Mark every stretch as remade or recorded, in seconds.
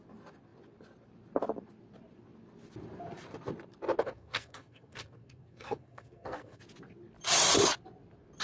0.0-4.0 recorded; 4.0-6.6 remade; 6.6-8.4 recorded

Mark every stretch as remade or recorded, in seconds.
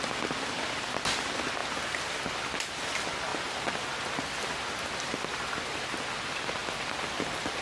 0.0-1.6 recorded; 1.6-2.7 remade; 2.7-3.3 recorded; 3.3-5.9 remade; 5.9-6.6 recorded; 6.6-7.6 remade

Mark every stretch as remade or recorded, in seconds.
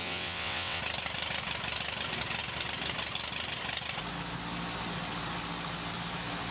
0.0-0.8 remade; 0.8-6.5 recorded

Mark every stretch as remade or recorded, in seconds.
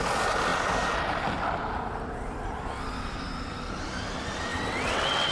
0.0-4.5 recorded; 4.5-5.3 remade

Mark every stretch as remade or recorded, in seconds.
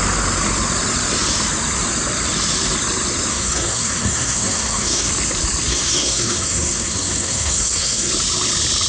0.0-3.3 recorded; 3.3-5.1 remade; 5.1-5.7 recorded; 5.7-8.1 remade; 8.1-8.9 recorded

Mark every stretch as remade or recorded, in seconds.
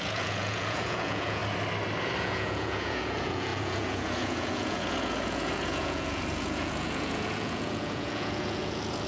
0.0-1.4 remade; 1.4-2.2 recorded; 2.2-9.1 remade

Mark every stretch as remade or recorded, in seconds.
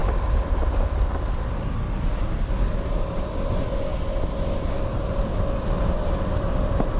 0.0-7.0 recorded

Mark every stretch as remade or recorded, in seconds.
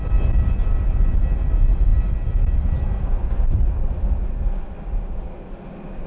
0.0-6.1 recorded